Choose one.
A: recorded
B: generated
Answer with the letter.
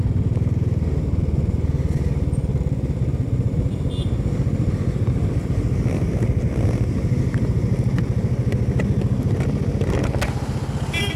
A